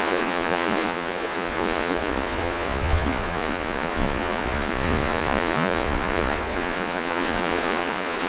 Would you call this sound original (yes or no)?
no